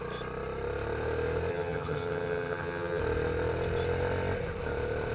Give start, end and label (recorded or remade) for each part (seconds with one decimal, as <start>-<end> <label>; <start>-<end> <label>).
0.0-1.5 recorded; 1.5-3.0 remade; 3.0-5.1 recorded